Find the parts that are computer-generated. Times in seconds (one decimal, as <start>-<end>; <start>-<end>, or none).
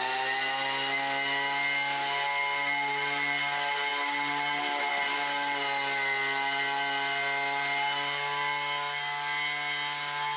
none